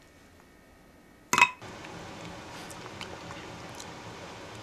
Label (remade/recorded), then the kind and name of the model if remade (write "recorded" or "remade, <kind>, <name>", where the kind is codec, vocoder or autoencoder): recorded